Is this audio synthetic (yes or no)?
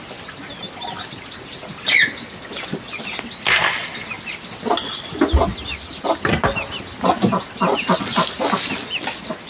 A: no